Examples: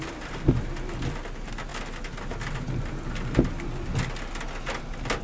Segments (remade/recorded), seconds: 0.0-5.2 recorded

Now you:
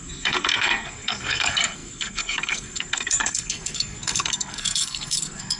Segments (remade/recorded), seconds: 0.0-5.6 remade

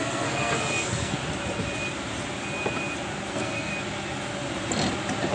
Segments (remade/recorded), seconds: 0.0-1.2 remade; 1.2-3.3 recorded; 3.3-3.7 remade; 3.7-5.3 recorded

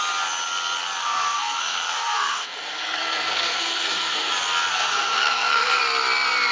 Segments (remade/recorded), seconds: 0.0-1.0 recorded; 1.0-4.3 remade; 4.3-4.7 recorded; 4.7-5.8 remade; 5.8-6.5 recorded

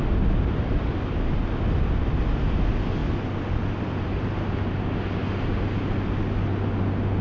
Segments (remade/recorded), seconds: 0.0-7.2 recorded

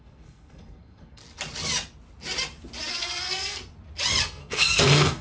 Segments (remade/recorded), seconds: 0.0-1.2 remade; 1.2-2.9 recorded; 2.9-3.6 remade; 3.6-4.2 recorded; 4.2-5.2 remade